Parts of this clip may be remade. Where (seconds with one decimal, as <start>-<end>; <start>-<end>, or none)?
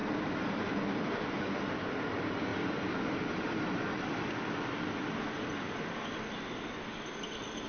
none